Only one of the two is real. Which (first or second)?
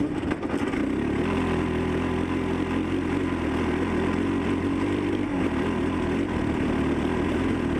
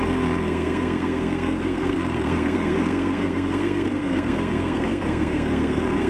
first